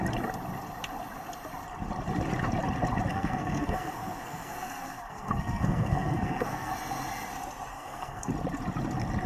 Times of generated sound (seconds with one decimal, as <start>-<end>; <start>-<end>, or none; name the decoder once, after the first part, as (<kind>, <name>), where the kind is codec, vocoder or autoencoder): 3.1-6.7 (codec, SNAC); 7.7-8.3